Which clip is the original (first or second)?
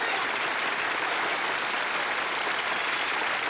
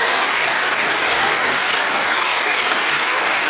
first